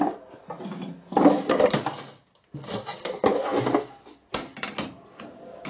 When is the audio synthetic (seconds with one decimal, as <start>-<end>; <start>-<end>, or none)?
none